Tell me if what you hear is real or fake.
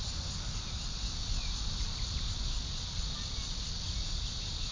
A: real